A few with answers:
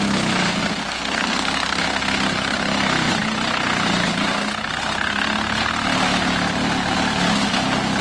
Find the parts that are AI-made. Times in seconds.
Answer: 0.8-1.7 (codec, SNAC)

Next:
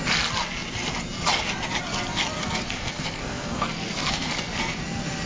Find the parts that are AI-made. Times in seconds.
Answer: 2.4-4.8 (codec, SNAC)

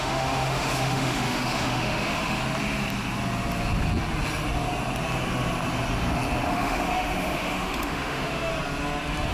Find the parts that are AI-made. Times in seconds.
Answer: 0.0-2.4 (autoencoder, DAC-VAE); 6.5-8.5

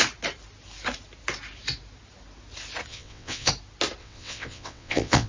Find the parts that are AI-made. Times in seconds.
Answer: 2.9-3.5 (vocoder, WaveNeXt); 4.0-5.3